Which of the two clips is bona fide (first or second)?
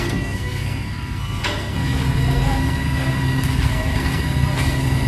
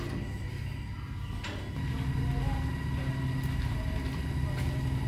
second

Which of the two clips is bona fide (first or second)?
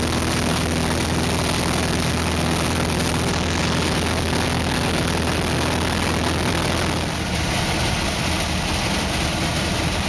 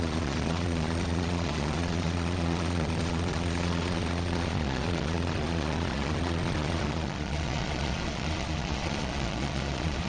first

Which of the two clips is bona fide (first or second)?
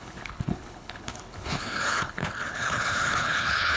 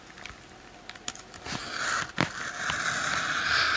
second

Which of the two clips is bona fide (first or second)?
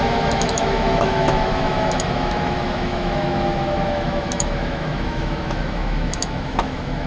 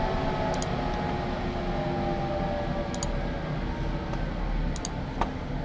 second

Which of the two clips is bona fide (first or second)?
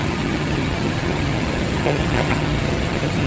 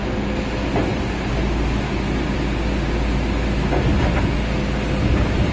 second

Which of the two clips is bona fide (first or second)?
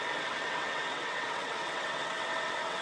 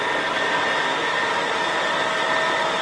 second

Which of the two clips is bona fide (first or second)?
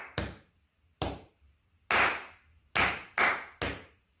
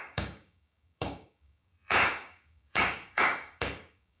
first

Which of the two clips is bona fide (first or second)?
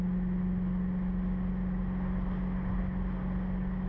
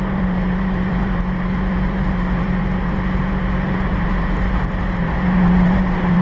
first